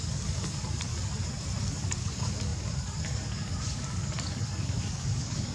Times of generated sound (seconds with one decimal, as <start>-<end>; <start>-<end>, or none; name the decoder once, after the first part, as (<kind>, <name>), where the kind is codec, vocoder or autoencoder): 0.0-0.9 (codec, DAC); 1.6-5.5